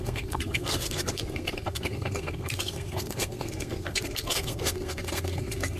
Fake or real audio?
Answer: fake